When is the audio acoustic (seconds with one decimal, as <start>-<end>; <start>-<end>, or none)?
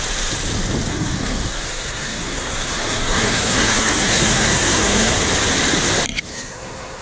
0.0-0.9; 5.1-6.3